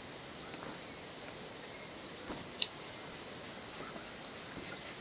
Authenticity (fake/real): real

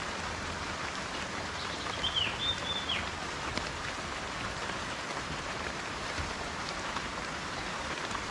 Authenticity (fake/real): fake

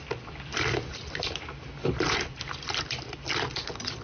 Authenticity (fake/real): fake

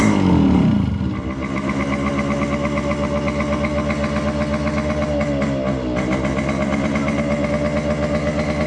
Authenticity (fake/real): real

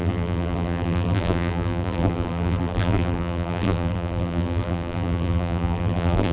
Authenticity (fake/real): fake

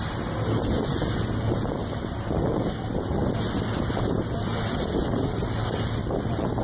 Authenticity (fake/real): real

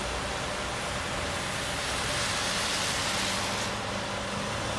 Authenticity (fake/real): real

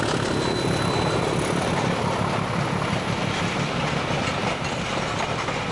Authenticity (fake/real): real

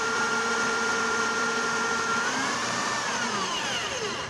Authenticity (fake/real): fake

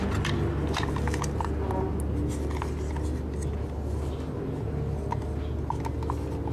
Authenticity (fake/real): real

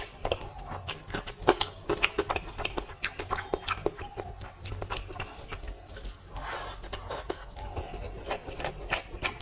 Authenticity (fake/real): real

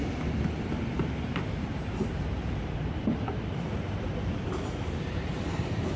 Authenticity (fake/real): fake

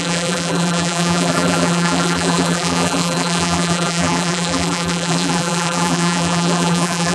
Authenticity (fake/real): fake